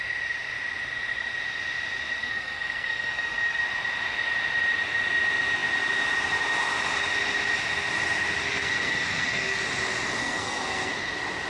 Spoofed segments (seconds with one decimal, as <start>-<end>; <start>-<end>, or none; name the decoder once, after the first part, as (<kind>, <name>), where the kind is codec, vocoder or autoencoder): 2.2-3.6 (codec, SNAC); 8.4-9.6; 10.2-10.9